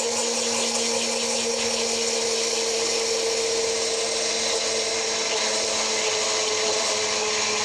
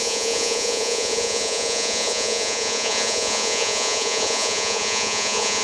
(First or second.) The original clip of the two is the first